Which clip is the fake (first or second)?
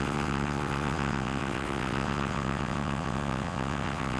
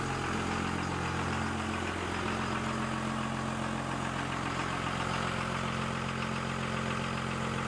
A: first